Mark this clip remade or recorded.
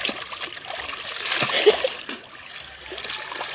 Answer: recorded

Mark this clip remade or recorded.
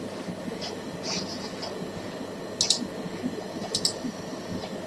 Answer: recorded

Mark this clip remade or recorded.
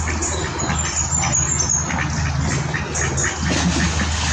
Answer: recorded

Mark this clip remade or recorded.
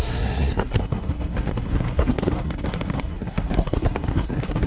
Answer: remade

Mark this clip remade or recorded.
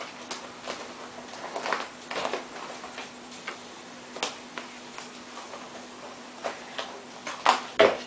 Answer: recorded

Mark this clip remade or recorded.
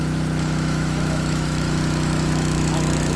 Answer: remade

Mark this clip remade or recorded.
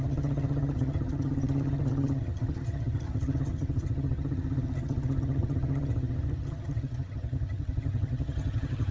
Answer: remade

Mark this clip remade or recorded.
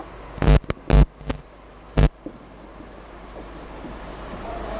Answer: recorded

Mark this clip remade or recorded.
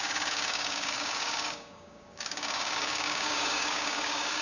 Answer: remade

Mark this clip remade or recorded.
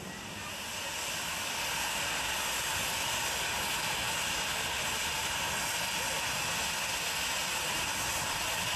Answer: recorded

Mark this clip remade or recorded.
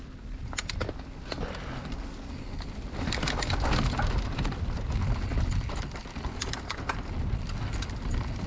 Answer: recorded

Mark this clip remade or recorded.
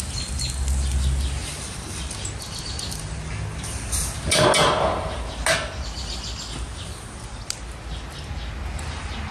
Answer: recorded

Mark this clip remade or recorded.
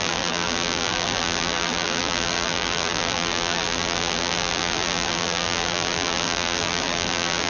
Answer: remade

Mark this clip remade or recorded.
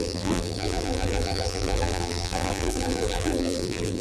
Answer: remade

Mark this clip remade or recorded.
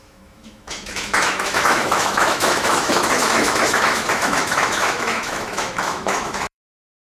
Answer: remade